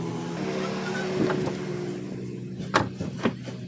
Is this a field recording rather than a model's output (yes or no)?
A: yes